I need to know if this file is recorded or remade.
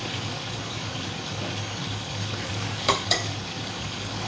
remade